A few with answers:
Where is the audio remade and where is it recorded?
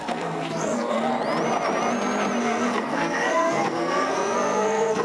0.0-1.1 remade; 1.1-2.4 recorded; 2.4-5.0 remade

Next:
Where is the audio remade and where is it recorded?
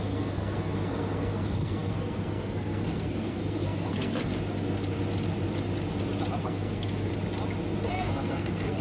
0.0-4.3 remade; 4.3-6.4 recorded; 6.4-7.1 remade; 7.1-7.9 recorded; 7.9-8.8 remade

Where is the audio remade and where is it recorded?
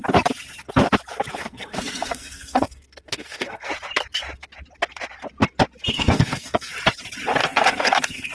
0.0-1.3 recorded; 1.3-3.7 remade; 3.7-5.9 recorded; 5.9-6.7 remade; 6.7-7.4 recorded; 7.4-8.3 remade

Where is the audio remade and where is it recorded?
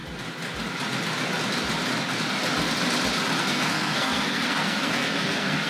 0.0-3.4 recorded; 3.4-5.7 remade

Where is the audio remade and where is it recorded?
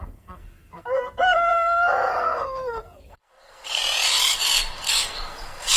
0.0-3.8 remade; 3.8-4.3 recorded; 4.3-5.8 remade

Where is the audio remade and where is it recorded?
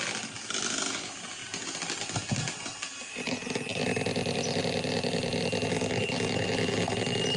0.0-7.4 recorded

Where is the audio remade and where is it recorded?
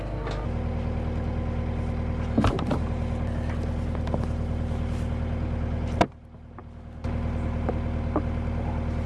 0.0-9.1 recorded